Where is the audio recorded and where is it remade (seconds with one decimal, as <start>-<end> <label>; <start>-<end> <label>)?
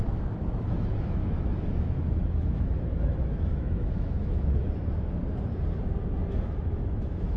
0.0-5.2 remade; 5.2-6.3 recorded; 6.3-7.4 remade